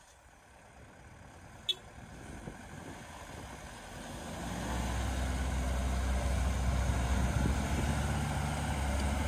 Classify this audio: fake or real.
real